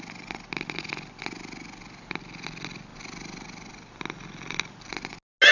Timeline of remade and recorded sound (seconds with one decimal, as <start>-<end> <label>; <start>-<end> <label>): 0.0-5.5 recorded